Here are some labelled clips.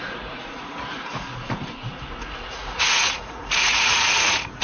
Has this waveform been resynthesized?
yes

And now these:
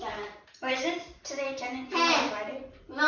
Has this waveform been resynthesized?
no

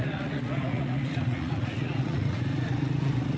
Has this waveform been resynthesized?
yes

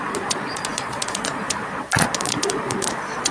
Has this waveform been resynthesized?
yes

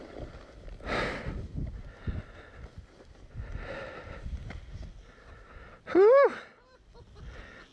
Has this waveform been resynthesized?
no